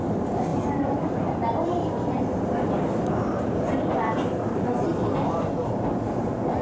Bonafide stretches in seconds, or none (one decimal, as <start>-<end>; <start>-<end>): 4.9-6.1